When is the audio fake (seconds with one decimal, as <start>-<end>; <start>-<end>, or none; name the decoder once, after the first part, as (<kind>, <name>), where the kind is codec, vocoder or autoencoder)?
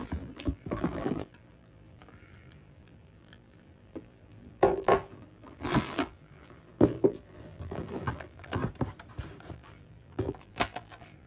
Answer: 0.0-8.6 (vocoder, BigVGAN v2); 9.5-11.3